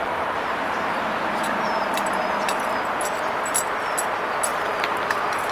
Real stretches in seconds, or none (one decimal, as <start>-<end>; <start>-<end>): 3.3-4.5; 5.1-5.5

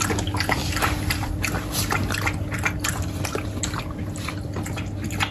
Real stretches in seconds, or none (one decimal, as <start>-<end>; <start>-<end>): 0.0-5.3

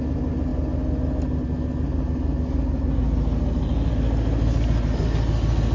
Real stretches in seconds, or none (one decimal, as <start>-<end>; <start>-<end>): 0.0-5.7

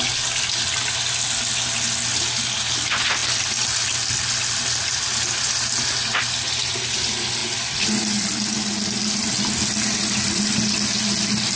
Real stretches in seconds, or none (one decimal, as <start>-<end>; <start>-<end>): 0.0-11.6